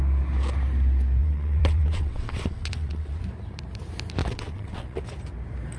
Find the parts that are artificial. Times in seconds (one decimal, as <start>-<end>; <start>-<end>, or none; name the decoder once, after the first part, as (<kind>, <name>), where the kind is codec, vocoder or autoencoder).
1.2-3.2 (vocoder, WaveNeXt); 4.2-5.0